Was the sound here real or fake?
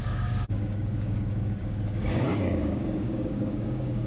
fake